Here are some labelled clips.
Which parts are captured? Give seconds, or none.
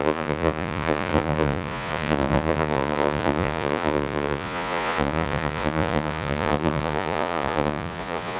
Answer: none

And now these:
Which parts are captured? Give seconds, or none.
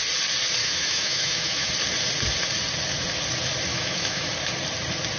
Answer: 0.0-0.6; 1.7-3.7; 4.3-5.2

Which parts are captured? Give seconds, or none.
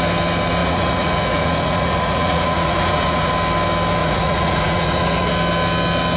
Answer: 0.0-0.6; 3.3-4.0; 5.3-6.2